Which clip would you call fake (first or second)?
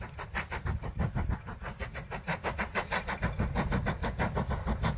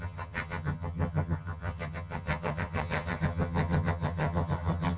second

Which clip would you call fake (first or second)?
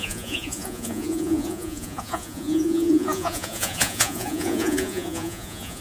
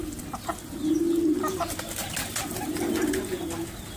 first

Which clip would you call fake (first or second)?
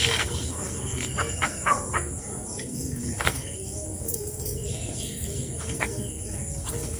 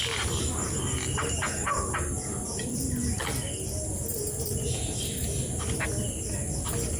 first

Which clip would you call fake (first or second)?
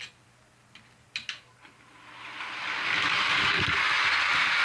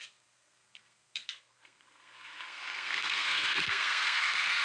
second